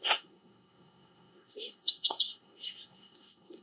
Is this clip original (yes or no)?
no